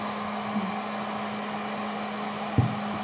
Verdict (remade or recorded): recorded